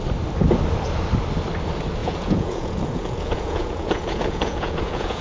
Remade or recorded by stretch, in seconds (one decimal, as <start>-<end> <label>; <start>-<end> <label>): 0.0-2.0 recorded; 2.0-5.2 remade